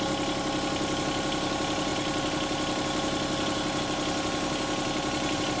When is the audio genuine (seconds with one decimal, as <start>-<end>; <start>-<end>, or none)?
0.0-5.6